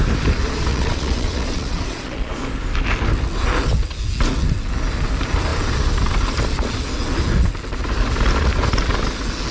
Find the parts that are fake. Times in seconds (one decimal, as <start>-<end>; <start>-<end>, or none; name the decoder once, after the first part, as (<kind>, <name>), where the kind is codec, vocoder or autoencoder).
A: 0.7-2.3 (vocoder, Vocos)